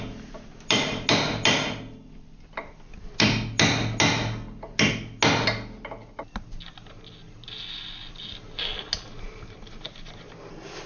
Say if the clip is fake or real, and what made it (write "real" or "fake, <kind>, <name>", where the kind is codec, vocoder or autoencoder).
real